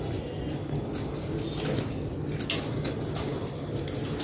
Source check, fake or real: real